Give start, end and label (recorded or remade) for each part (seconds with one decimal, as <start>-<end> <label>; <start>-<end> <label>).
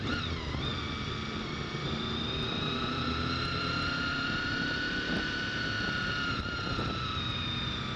0.0-8.0 recorded